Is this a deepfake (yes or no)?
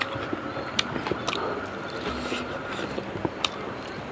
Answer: no